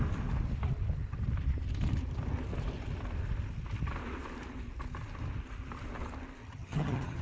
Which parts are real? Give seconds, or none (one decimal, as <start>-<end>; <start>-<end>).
0.0-6.4